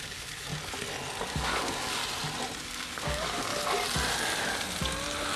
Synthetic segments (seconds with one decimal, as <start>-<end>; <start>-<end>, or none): 0.0-0.5; 1.2-2.0; 2.6-3.5